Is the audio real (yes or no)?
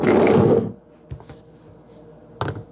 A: yes